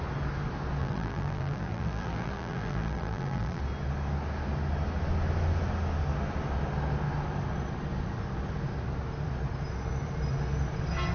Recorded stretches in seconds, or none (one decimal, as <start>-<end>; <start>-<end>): 0.0-0.8; 3.6-11.1